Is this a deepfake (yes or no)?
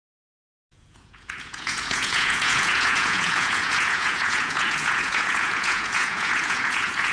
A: yes